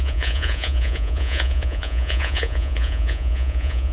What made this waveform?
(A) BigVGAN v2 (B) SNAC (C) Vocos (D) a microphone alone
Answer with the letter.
C